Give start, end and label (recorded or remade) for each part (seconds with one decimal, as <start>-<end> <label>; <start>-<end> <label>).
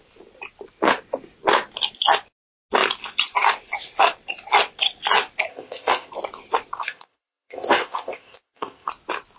0.0-5.5 recorded; 5.5-6.1 remade; 6.1-6.8 recorded; 6.8-8.9 remade; 8.9-9.4 recorded